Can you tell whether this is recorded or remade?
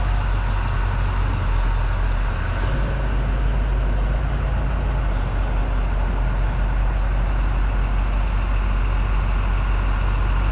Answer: recorded